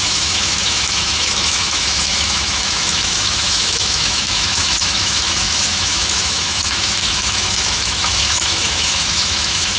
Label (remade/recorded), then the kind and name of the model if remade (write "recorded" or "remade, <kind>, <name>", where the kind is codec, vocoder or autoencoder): remade, autoencoder, DAC-VAE